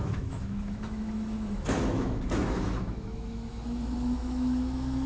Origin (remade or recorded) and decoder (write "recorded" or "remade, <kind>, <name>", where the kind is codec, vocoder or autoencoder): remade, autoencoder, DAC-VAE